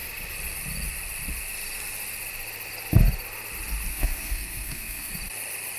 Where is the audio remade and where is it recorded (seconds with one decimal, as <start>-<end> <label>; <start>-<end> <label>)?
0.0-3.9 recorded; 3.9-5.1 remade; 5.1-5.8 recorded